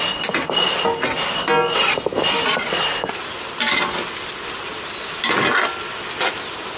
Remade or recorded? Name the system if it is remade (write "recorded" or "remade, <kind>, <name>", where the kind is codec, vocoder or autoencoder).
recorded